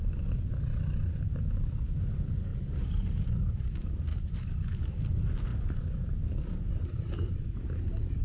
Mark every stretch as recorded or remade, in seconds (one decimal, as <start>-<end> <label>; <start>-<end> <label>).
0.0-8.2 recorded